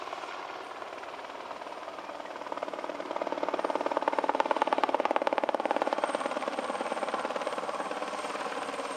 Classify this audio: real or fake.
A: fake